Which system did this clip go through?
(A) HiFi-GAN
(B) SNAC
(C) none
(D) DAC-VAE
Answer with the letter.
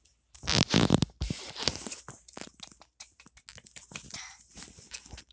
C